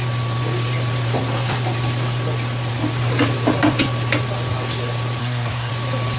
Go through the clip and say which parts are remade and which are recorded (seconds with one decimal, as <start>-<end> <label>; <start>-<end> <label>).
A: 0.0-5.2 recorded; 5.2-5.7 remade; 5.7-6.2 recorded